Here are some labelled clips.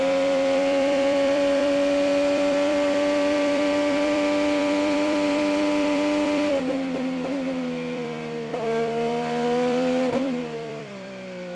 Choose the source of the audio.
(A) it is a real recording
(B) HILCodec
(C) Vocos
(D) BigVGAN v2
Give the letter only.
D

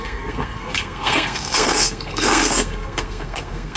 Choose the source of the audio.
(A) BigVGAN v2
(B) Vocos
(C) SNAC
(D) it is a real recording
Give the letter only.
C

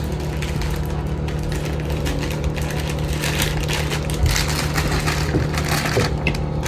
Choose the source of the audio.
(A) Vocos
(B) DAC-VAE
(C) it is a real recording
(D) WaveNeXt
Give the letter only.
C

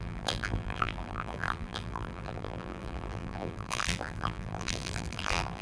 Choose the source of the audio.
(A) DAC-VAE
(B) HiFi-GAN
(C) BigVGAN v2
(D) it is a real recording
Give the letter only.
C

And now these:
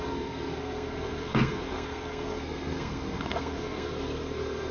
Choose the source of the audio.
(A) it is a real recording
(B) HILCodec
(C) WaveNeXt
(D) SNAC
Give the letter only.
D